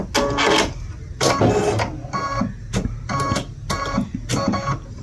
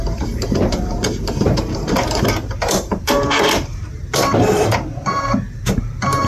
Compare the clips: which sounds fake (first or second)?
second